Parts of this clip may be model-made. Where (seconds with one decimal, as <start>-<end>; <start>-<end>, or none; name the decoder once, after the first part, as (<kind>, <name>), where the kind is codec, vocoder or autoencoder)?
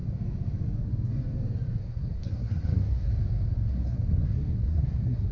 1.8-3.1 (codec, SNAC); 3.7-5.3